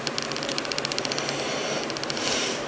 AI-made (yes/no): no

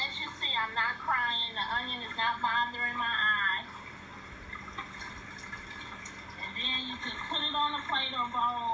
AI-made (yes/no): no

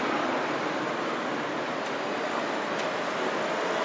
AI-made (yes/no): no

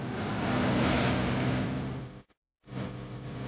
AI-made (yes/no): no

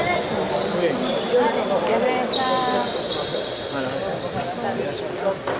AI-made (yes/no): no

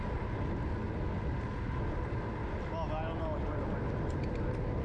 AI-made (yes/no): no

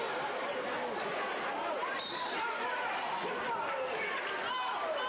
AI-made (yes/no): no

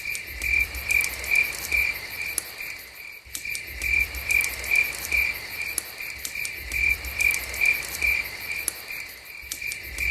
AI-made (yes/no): no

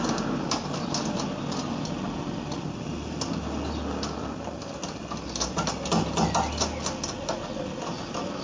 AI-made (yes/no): no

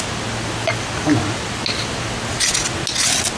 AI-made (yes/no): no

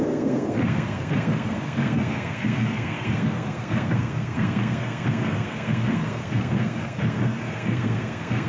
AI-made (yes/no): yes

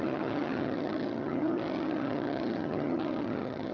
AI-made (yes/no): yes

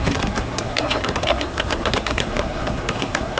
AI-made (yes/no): yes